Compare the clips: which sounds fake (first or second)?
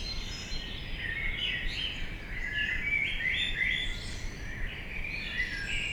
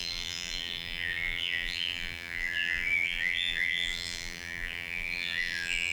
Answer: second